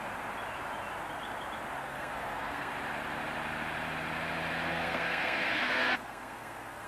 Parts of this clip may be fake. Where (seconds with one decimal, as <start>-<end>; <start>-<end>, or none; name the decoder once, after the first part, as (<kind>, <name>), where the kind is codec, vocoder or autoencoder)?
1.8-2.7 (codec, SNAC); 4.7-6.9